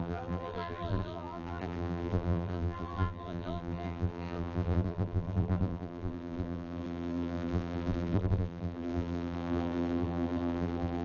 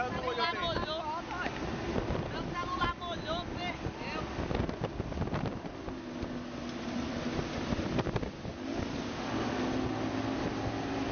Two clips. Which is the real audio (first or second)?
second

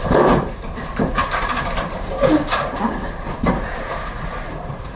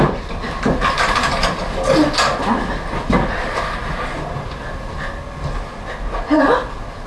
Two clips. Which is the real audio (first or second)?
second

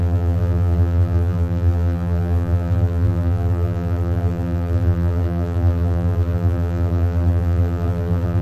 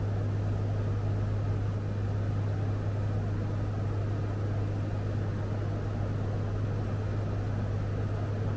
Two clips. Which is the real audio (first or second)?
second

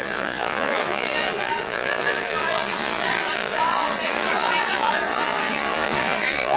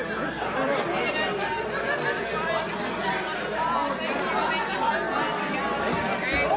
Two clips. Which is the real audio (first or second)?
second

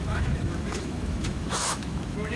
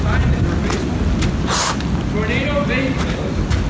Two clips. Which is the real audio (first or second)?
second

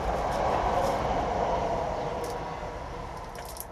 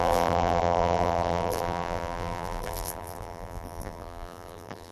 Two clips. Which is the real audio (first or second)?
first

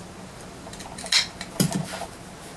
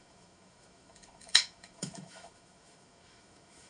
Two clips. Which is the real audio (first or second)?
first